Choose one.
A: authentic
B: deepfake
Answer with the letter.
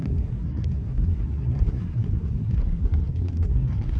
B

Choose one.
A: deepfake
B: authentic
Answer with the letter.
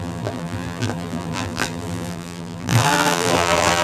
A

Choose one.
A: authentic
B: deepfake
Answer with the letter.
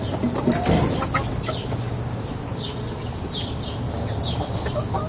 A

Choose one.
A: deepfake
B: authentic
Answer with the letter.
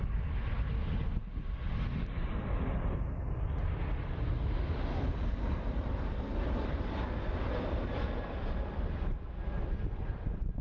B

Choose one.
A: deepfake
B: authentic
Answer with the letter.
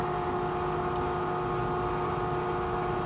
B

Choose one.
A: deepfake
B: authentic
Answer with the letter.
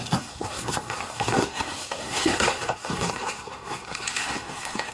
A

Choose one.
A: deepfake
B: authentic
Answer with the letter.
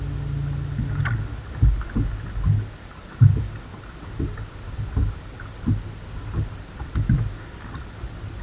B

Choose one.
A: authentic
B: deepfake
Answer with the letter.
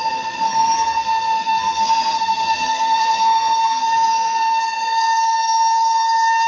B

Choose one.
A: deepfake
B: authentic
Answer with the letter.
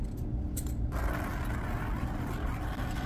B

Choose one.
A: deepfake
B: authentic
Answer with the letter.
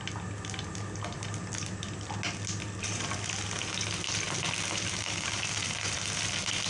B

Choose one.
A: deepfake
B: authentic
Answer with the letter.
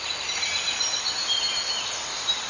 B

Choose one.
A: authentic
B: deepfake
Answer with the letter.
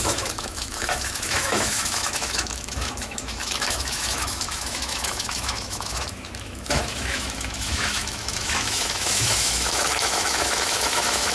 B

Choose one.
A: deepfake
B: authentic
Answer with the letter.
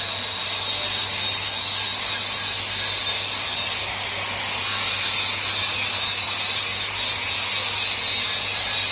B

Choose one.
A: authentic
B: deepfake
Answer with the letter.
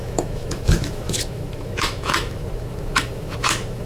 B